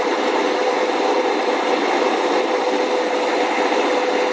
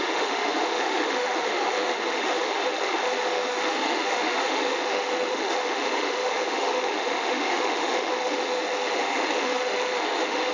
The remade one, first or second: second